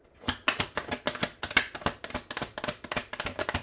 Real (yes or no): yes